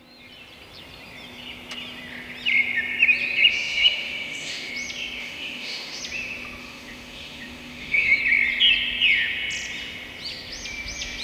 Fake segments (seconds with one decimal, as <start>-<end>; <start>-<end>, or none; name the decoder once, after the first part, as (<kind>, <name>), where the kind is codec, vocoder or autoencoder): 3.5-4.7 (autoencoder, DAC-VAE); 5.2-6.0; 6.6-8.2